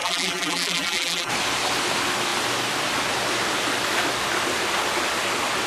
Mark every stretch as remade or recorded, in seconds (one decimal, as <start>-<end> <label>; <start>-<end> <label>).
0.0-1.3 remade; 1.3-5.7 recorded